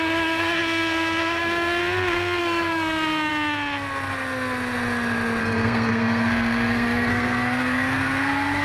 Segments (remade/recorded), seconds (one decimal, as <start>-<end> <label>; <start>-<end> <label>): 0.0-1.8 remade; 1.8-2.4 recorded; 2.4-3.3 remade; 3.3-5.4 recorded; 5.4-8.6 remade